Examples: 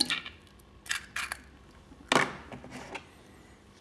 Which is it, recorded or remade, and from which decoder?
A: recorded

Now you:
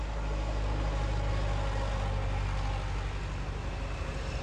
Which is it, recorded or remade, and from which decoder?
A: recorded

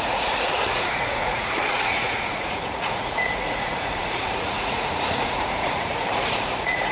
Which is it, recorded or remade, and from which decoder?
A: remade, vocoder, Vocos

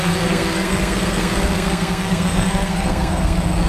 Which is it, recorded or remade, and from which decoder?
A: remade, codec, SNAC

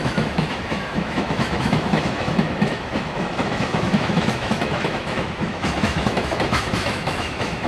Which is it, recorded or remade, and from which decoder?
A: remade, autoencoder, DAC-VAE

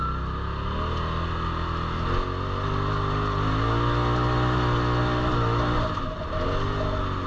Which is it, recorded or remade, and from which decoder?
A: recorded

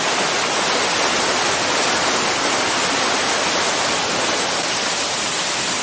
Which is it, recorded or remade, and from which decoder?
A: recorded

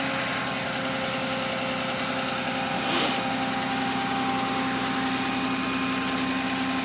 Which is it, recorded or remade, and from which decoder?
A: recorded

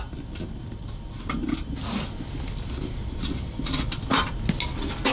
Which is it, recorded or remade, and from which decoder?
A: recorded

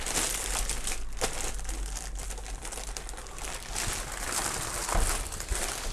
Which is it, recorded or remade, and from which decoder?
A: recorded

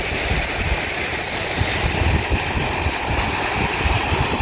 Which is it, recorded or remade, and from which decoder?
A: recorded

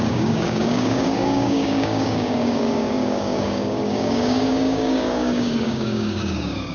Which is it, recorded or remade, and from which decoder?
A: remade, codec, DAC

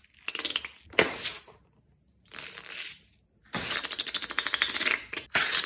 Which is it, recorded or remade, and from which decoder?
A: recorded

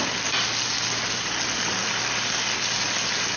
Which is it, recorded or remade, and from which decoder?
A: recorded